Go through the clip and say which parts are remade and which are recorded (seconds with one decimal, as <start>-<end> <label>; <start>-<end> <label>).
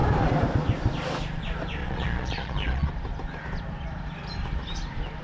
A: 0.0-1.8 recorded; 1.8-2.9 remade; 2.9-5.2 recorded